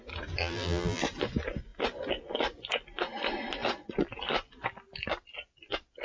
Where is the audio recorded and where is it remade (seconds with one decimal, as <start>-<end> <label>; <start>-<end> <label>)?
0.0-0.4 recorded; 0.4-1.0 remade; 1.0-6.0 recorded